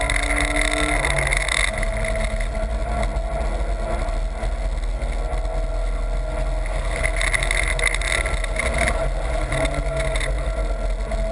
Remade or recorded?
recorded